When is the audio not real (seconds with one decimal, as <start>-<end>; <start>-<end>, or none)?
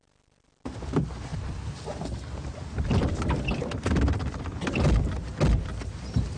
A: none